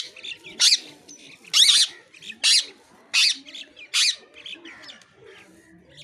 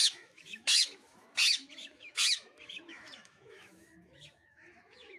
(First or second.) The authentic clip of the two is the first